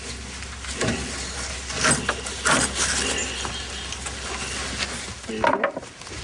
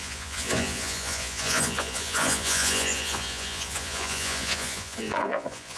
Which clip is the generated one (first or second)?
second